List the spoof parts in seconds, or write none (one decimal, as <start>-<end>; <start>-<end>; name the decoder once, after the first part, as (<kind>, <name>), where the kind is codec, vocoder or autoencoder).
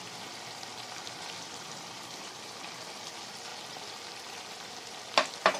0.0-3.5 (vocoder, BigVGAN v2)